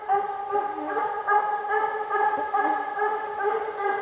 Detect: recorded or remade recorded